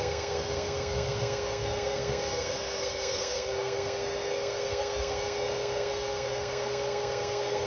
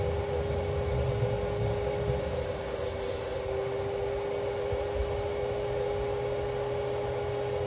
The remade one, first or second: first